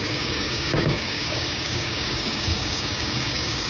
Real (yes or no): no